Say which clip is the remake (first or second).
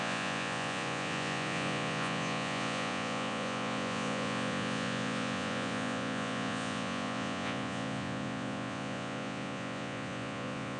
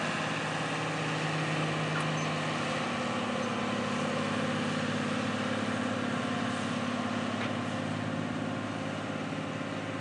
first